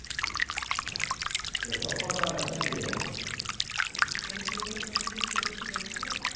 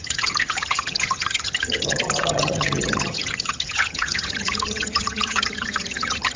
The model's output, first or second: second